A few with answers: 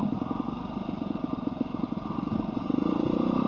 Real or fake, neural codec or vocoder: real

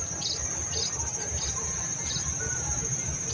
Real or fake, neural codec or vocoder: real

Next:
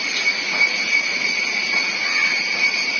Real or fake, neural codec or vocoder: fake, vocoder, Vocos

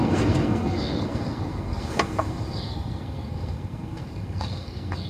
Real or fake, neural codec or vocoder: fake, codec, SNAC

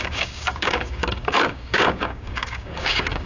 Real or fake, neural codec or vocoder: fake, codec, DAC